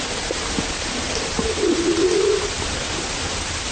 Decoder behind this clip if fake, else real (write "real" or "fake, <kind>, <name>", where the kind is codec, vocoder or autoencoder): real